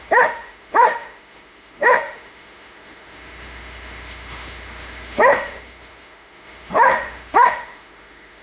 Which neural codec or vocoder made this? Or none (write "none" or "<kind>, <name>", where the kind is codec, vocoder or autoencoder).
autoencoder, DAC-VAE